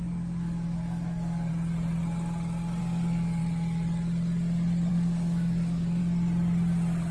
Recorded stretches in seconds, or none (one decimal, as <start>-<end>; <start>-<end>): 1.5-2.8; 3.4-4.9; 6.0-7.1